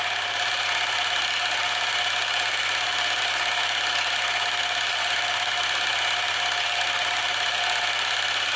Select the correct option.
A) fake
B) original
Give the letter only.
B